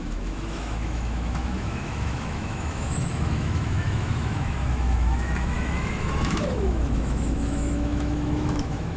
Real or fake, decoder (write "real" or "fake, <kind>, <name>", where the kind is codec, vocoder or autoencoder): fake, autoencoder, DAC-VAE